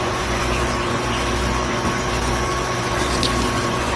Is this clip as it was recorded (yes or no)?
no